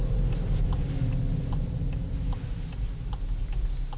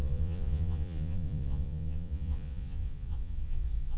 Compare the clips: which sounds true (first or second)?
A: first